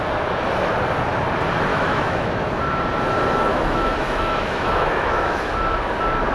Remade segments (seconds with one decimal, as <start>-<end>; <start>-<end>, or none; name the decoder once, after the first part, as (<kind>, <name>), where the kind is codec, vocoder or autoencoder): 1.7-2.5 (autoencoder, DAC-VAE); 3.5-5.5